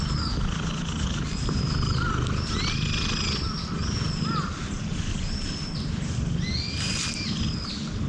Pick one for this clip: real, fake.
real